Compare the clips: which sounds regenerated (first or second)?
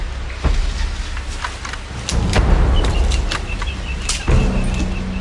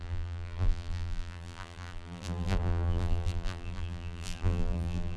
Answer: second